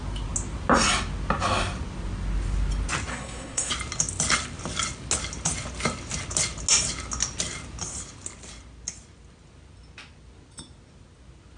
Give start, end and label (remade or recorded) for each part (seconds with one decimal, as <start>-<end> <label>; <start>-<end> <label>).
0.0-3.1 recorded; 3.1-3.7 remade; 3.7-11.6 recorded